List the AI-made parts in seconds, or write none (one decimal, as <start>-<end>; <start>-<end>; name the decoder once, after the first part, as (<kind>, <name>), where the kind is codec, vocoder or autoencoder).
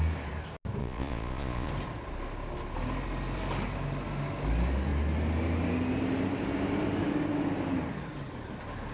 0.8-1.7 (vocoder, Vocos)